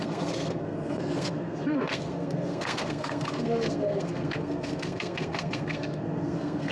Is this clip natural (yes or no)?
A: no